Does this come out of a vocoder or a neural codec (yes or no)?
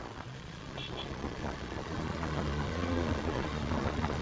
yes